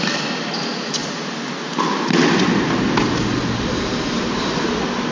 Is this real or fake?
real